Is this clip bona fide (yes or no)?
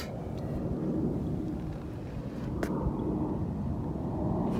yes